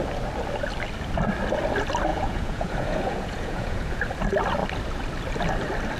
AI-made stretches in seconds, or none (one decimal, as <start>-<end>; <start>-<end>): 2.1-4.0